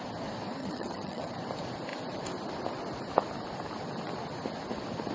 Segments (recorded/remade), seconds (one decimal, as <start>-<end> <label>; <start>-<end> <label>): 0.0-0.6 recorded; 0.6-1.3 remade; 1.3-5.1 recorded